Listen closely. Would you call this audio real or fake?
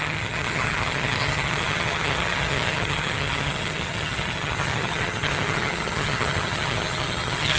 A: fake